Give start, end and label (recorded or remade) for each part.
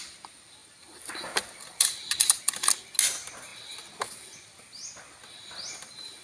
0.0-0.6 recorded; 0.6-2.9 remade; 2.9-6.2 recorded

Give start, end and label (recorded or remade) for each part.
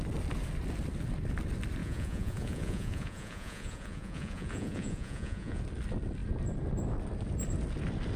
0.0-1.8 recorded; 1.8-5.6 remade; 5.6-8.2 recorded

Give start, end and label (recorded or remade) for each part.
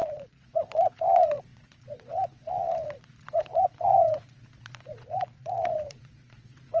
0.0-6.8 remade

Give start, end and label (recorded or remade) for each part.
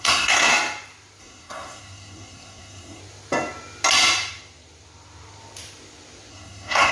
0.0-0.5 remade; 0.5-1.2 recorded; 1.2-3.0 remade; 3.0-6.3 recorded; 6.3-6.9 remade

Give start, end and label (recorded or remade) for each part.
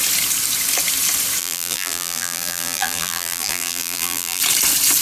0.0-1.4 recorded; 1.4-4.4 remade; 4.4-5.0 recorded